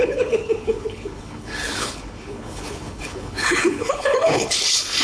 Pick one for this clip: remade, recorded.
remade